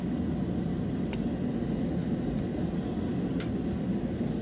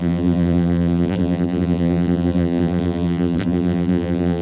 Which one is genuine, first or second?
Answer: first